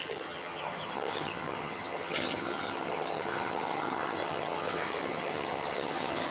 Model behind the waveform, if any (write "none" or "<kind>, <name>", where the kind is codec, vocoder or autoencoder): vocoder, HiFi-GAN